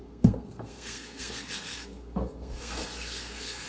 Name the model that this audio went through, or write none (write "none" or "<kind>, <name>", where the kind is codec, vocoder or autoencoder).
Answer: codec, SNAC